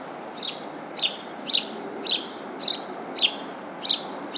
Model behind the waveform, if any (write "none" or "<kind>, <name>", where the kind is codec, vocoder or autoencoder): none